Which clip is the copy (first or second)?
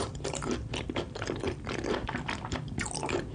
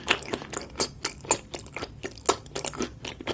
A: first